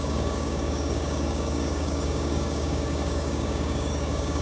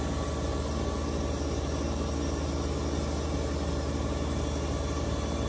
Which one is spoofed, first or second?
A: first